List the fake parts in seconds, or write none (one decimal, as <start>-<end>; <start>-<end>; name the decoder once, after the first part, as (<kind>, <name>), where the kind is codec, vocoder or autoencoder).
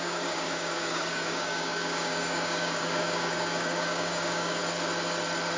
0.0-4.6 (codec, DAC)